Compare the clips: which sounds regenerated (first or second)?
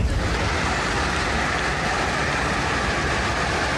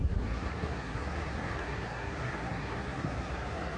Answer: second